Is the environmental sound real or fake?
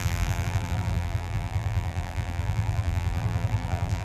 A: fake